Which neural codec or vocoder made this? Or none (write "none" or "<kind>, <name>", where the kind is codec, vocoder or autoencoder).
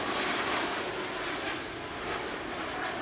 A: none